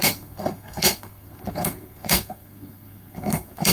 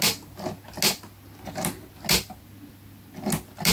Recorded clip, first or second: second